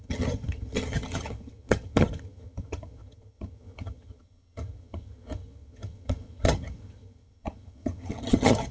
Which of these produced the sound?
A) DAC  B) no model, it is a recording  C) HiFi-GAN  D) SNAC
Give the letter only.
C